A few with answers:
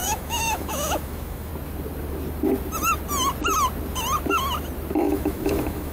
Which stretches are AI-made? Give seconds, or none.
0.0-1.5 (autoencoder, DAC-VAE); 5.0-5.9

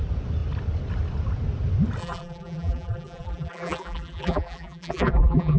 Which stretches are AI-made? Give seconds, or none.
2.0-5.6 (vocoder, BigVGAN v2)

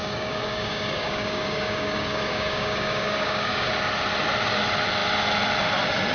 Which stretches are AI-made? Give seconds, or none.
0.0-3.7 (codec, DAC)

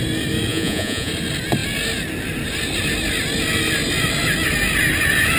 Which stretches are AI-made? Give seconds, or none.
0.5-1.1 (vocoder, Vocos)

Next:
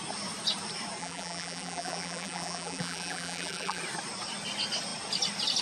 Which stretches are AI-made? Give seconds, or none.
1.0-3.8 (vocoder, BigVGAN v2)

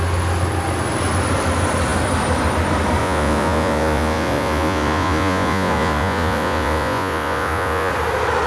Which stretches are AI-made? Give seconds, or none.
3.0-7.9 (vocoder, Vocos)